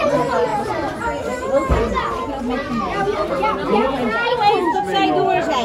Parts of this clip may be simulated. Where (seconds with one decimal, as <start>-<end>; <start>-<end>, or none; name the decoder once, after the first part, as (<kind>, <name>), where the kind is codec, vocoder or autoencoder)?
0.5-1.0 (vocoder, BigVGAN v2); 2.6-3.9